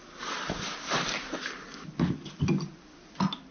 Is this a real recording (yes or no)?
yes